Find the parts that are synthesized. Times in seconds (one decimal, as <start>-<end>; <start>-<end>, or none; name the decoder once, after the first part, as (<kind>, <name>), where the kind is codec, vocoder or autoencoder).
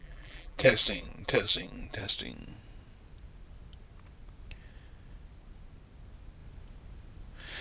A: 0.0-2.0 (vocoder, BigVGAN v2)